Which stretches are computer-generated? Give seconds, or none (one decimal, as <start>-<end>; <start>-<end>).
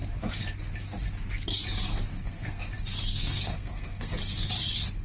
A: 2.1-2.6; 3.1-4.1